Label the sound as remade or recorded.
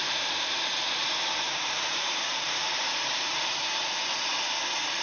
remade